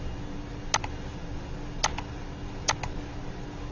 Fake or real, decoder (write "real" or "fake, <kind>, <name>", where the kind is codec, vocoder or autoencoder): real